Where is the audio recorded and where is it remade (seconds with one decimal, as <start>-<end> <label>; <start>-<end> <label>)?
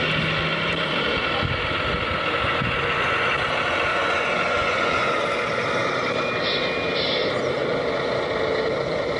0.0-3.9 recorded; 3.9-5.1 remade; 5.1-9.2 recorded